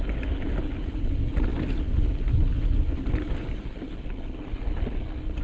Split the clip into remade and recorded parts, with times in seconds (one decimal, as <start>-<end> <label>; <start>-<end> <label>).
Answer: 0.0-5.4 recorded